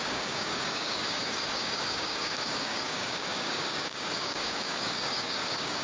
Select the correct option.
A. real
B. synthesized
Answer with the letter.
B